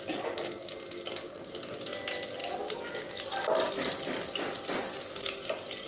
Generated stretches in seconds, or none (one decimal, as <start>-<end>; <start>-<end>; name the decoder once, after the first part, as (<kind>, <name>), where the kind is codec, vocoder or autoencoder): none